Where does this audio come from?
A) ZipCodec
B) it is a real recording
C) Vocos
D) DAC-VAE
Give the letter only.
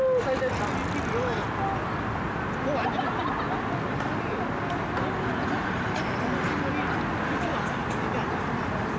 B